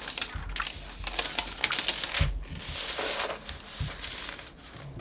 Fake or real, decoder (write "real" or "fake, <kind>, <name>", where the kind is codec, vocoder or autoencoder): real